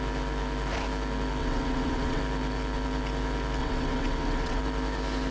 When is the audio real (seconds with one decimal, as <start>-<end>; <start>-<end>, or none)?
0.0-1.4; 2.2-3.6; 4.6-5.3